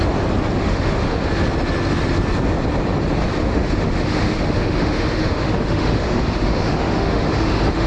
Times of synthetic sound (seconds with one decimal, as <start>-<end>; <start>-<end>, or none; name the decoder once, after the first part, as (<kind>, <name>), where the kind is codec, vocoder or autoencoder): 0.6-1.3 (autoencoder, DAC-VAE); 3.4-7.9